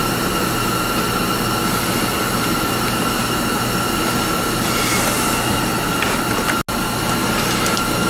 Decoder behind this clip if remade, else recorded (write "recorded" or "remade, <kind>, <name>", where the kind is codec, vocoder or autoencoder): recorded